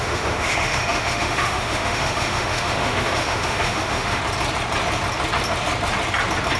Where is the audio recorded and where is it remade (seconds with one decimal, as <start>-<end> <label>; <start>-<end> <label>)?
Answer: 0.0-4.2 remade; 4.2-6.6 recorded